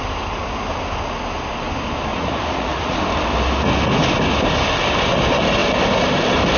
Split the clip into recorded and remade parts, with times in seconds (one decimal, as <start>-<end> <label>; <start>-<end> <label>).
0.0-2.1 recorded; 2.1-3.0 remade; 3.0-6.6 recorded